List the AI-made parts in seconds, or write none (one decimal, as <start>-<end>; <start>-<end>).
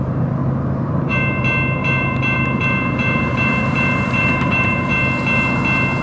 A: 0.4-1.4; 1.8-4.9